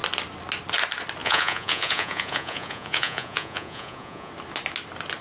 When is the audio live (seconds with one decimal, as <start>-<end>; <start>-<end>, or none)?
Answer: 0.0-1.2; 4.3-5.2